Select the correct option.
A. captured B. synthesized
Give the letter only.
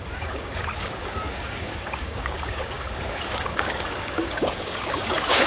B